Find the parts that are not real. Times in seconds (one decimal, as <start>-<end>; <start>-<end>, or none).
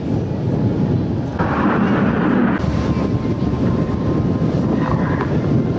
1.3-1.8; 2.4-5.2